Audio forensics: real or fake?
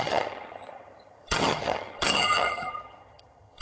fake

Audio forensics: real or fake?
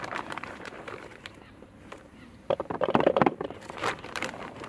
fake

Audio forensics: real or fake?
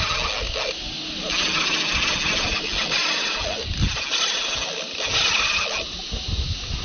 real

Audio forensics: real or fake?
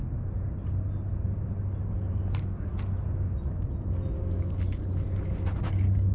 real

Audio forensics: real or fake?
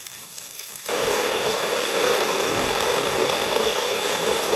fake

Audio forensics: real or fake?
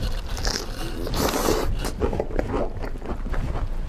real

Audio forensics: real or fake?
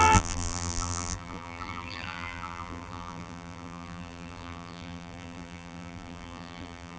fake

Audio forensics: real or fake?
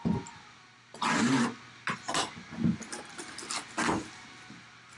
real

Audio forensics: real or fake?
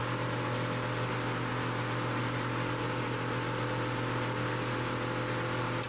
real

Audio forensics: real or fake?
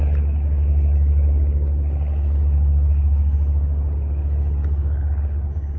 real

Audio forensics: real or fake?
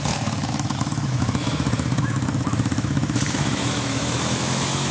fake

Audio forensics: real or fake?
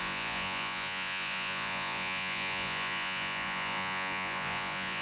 fake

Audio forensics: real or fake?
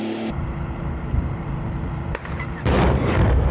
fake